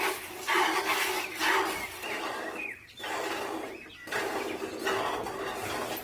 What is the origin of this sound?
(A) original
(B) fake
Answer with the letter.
A